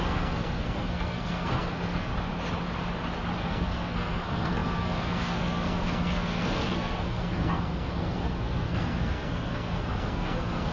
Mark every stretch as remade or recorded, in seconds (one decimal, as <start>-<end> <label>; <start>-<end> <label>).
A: 0.0-2.1 remade; 2.1-3.4 recorded; 3.4-10.7 remade